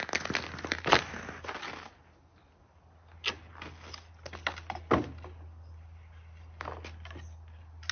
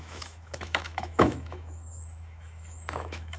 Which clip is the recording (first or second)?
first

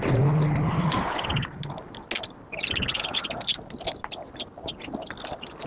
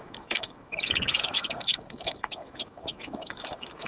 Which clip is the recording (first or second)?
first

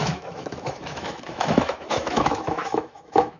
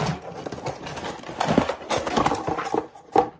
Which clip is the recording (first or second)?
second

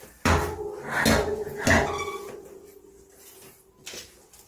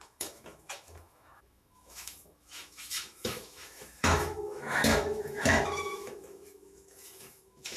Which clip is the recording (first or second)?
first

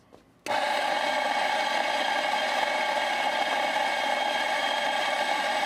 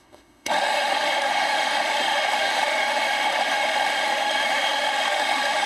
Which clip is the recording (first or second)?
first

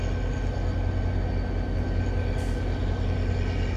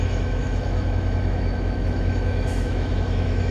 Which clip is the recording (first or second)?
first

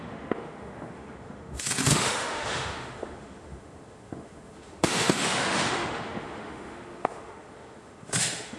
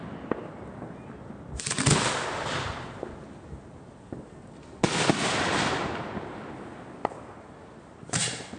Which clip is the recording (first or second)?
second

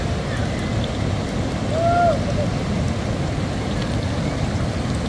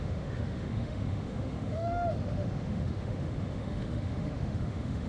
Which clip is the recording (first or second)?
first